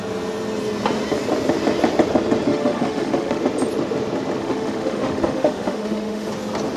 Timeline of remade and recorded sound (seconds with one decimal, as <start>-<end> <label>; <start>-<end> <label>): 0.0-2.5 recorded; 2.5-3.4 remade; 3.4-4.4 recorded; 4.4-6.3 remade; 6.3-6.8 recorded